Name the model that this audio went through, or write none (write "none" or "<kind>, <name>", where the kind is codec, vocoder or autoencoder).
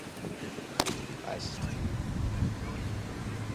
none